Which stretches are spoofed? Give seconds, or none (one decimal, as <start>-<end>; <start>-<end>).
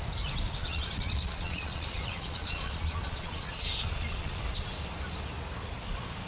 0.6-4.4